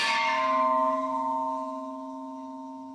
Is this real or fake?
fake